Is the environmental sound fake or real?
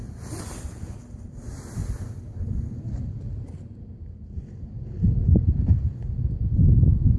real